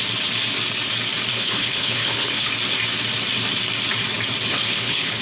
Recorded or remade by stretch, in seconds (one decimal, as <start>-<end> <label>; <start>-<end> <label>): 0.0-1.3 recorded; 1.3-2.5 remade; 2.5-4.5 recorded; 4.5-5.2 remade